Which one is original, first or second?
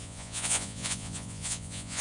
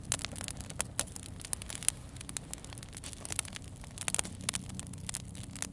second